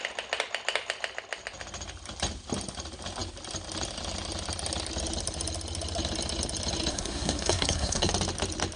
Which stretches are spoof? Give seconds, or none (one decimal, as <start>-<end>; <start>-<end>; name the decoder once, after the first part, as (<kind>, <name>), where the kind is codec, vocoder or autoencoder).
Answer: 6.9-8.1 (codec, SNAC)